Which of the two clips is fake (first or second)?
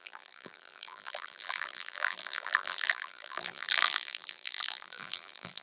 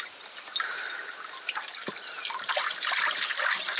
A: first